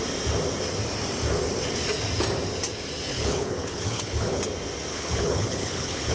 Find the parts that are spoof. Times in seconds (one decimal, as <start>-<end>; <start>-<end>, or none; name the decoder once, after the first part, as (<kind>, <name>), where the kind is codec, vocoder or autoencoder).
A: 3.1-4.4 (codec, HILCodec); 4.9-6.1